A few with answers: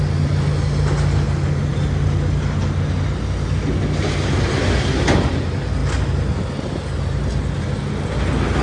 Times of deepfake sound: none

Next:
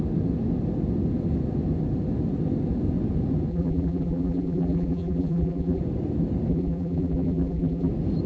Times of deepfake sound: 3.5-5.8; 6.5-7.9

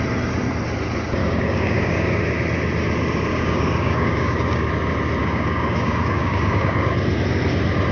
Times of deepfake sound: 1.2-2.2; 3.3-4.7; 5.2-6.9

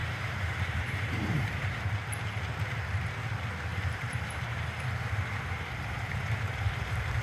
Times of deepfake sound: 0.0-1.9; 3.7-7.2